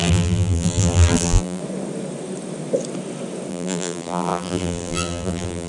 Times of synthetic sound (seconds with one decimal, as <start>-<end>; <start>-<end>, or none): 0.0-1.6; 3.5-5.7